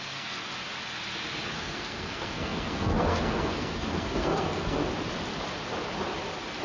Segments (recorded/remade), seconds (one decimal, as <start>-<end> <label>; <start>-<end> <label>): 0.0-0.5 remade; 0.5-1.5 recorded; 1.5-4.8 remade; 4.8-6.6 recorded

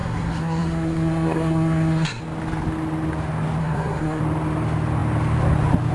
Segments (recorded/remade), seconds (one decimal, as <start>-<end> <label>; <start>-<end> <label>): 0.0-2.2 remade; 2.2-3.6 recorded; 3.6-4.2 remade; 4.2-5.9 recorded

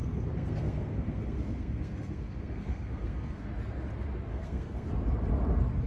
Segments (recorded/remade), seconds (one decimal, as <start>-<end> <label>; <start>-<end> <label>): 0.0-3.5 remade; 3.5-4.3 recorded; 4.3-4.9 remade; 4.9-5.9 recorded